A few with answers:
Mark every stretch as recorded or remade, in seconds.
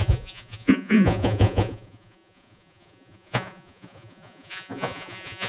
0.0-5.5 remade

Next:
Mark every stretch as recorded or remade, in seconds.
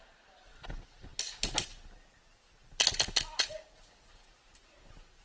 0.0-5.2 recorded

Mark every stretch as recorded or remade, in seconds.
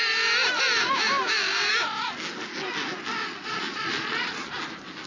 0.0-3.2 recorded; 3.2-4.5 remade; 4.5-5.1 recorded